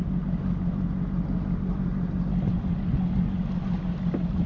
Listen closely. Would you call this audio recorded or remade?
recorded